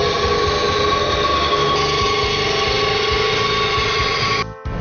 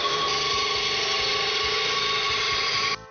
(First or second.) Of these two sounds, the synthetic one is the second